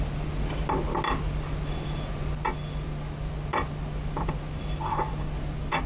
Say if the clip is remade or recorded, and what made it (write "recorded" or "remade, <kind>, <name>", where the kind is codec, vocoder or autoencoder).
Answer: recorded